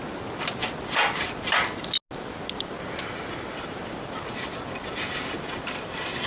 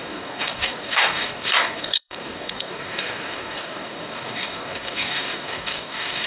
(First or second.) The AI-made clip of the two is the second